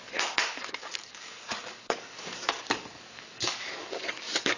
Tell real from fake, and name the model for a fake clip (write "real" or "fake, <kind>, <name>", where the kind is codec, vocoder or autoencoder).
fake, codec, DAC